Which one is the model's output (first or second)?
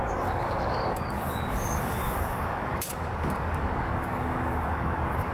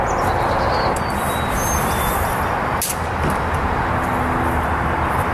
first